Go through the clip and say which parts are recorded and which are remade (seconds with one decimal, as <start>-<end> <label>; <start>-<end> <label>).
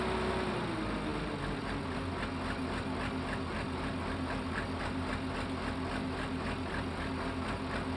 0.0-8.0 recorded